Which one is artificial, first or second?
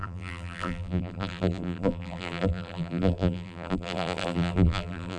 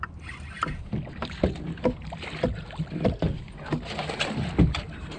first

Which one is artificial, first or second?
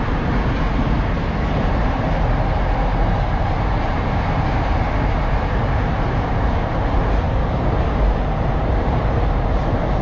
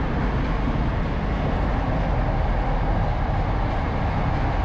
first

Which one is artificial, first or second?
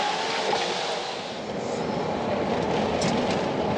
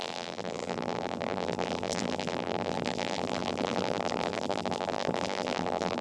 second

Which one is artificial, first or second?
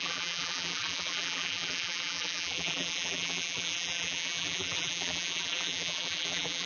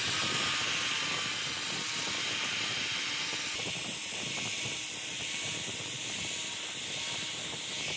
first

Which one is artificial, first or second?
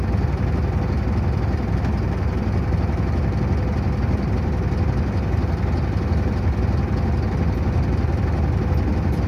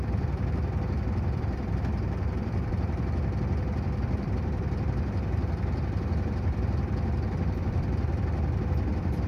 second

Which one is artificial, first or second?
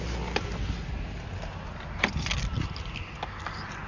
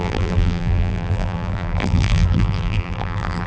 second